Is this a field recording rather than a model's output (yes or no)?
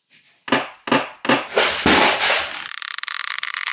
yes